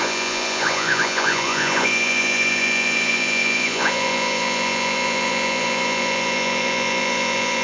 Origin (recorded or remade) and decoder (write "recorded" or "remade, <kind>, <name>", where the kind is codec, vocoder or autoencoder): remade, vocoder, Vocos